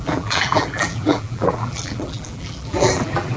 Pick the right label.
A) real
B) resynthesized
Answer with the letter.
B